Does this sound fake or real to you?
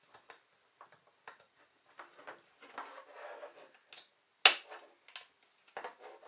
real